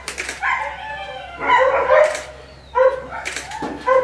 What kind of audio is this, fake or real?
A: real